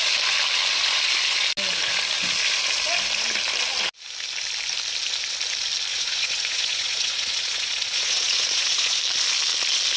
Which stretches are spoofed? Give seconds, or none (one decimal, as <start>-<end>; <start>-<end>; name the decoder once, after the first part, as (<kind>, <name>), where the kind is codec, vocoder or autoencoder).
5.9-9.0 (vocoder, Vocos)